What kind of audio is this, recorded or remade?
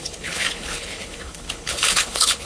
remade